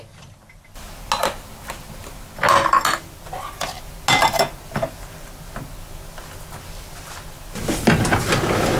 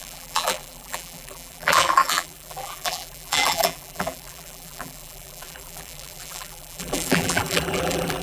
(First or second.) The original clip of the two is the first